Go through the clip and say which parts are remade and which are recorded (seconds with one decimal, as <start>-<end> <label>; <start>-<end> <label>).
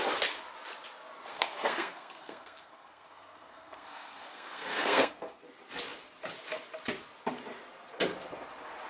0.0-1.3 recorded; 1.3-5.4 remade; 5.4-8.9 recorded